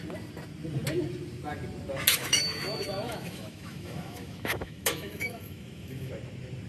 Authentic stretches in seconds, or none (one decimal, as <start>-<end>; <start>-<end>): 0.0-2.1; 6.1-6.7